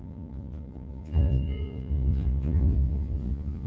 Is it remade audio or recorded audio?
remade